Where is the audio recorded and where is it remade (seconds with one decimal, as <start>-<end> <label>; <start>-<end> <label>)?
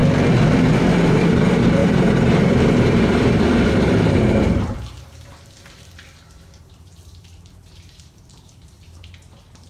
0.0-0.7 recorded; 0.7-9.7 remade